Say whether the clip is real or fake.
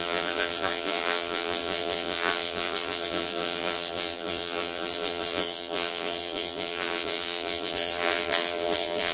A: fake